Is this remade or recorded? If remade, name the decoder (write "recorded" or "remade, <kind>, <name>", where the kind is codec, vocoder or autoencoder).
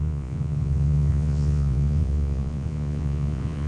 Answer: remade, vocoder, Vocos